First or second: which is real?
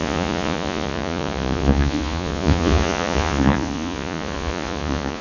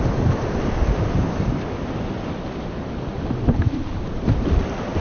second